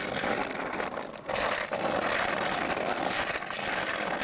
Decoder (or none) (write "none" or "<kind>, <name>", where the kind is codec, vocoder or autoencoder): vocoder, BigVGAN v2